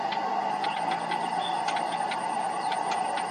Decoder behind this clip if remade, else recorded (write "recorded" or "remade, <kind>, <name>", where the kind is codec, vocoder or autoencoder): recorded